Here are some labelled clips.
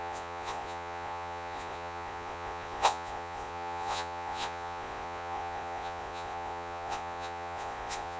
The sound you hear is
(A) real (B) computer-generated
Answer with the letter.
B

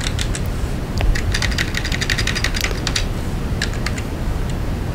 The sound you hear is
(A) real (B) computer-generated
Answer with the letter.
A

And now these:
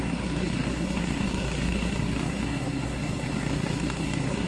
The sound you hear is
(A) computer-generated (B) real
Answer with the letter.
A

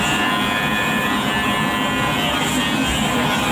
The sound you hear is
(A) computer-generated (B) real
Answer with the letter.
B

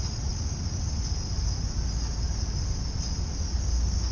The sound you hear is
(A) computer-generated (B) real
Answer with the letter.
B